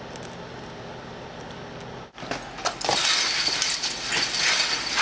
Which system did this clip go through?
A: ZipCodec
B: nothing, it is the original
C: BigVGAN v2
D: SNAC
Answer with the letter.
B